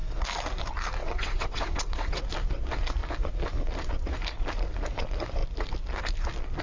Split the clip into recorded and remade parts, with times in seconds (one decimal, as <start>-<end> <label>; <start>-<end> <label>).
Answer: 0.0-1.0 recorded; 1.0-2.2 remade; 2.2-6.6 recorded